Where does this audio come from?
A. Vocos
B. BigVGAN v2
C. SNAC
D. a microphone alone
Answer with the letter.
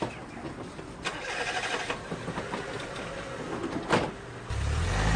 D